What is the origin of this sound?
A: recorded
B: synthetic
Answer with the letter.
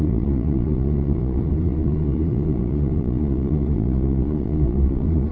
B